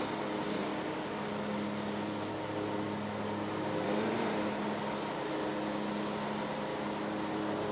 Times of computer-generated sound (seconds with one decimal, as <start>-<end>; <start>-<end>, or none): none